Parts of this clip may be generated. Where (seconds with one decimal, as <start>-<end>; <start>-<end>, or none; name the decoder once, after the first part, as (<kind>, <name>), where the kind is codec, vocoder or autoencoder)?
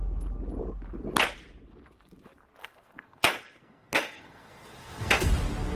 2.6-5.3 (codec, SNAC)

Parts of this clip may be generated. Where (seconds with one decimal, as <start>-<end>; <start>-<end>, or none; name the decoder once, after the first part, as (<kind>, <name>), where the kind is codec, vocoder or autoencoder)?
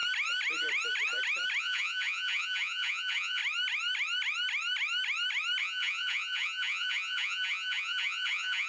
1.6-3.4 (vocoder, Vocos); 5.6-8.7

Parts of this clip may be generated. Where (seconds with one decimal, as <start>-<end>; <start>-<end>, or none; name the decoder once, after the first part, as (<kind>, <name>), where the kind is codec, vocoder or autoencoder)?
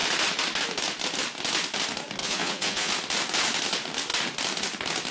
2.2-2.9 (vocoder, Vocos)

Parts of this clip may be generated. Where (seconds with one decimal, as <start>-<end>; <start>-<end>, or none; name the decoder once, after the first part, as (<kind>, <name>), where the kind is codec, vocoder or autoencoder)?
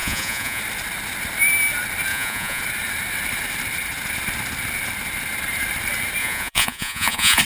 0.0-0.6 (vocoder, Vocos); 2.1-2.6; 6.2-7.4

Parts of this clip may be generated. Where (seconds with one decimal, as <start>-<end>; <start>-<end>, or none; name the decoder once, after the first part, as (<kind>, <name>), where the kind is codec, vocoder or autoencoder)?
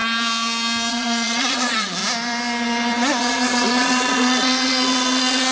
0.9-2.0 (vocoder, Vocos); 3.2-5.5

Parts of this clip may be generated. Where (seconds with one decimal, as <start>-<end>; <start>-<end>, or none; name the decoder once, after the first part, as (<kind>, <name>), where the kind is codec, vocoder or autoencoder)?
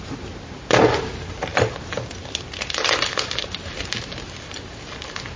none